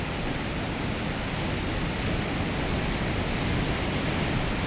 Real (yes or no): yes